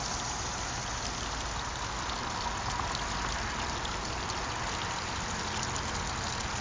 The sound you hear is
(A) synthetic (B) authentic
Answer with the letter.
B